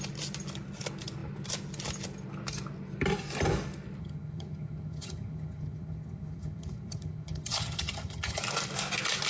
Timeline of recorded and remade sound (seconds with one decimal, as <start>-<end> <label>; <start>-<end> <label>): 0.0-4.0 recorded; 4.0-8.4 remade; 8.4-9.3 recorded